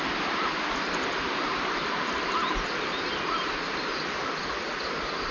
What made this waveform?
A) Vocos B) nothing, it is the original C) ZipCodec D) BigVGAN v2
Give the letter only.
B